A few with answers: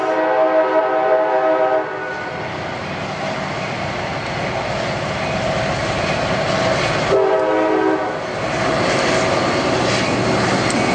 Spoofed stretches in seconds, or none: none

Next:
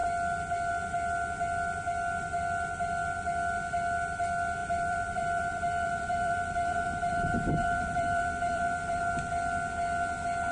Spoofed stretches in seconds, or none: 4.6-9.0 (vocoder, BigVGAN v2)

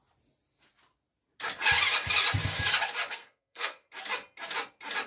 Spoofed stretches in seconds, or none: 3.1-3.8 (codec, SNAC)